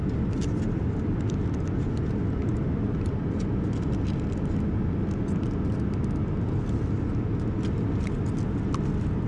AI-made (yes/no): no